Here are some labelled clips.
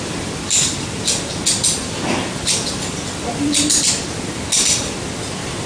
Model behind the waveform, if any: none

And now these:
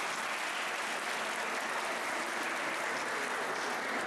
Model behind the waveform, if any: none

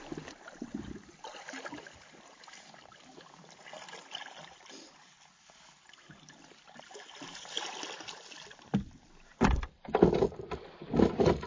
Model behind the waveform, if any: none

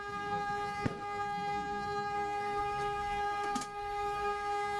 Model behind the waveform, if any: codec, SNAC